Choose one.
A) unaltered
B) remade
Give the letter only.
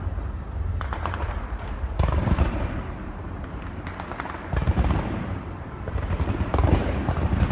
B